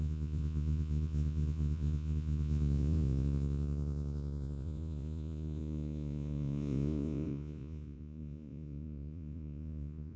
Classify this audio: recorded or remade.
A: remade